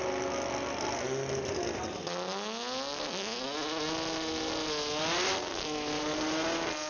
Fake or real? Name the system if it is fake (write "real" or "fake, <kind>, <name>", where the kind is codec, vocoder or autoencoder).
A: real